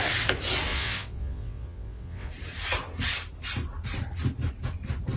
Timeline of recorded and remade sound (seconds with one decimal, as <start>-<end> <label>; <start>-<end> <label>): 0.0-0.7 recorded; 0.7-2.3 remade; 2.3-5.2 recorded